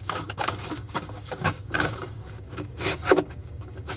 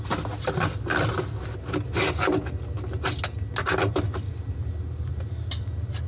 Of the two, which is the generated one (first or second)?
first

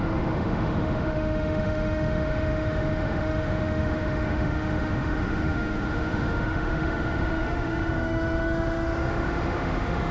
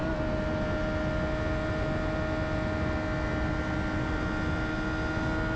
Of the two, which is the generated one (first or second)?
first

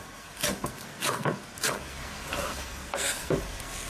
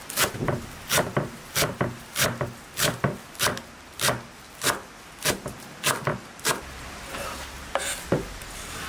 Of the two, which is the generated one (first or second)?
first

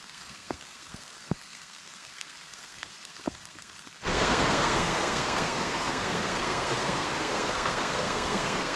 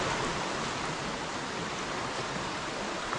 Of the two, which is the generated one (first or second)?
first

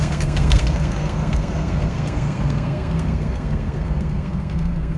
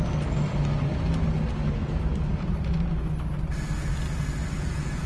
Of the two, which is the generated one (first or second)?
first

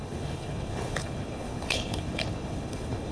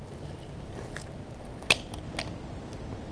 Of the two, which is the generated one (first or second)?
first